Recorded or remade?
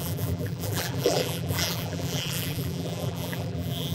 remade